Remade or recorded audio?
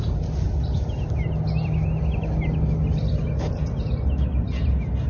recorded